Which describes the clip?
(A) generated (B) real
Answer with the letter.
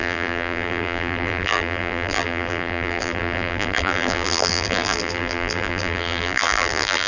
A